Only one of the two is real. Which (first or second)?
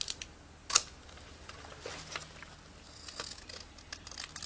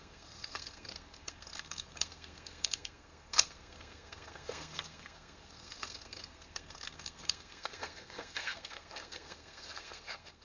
first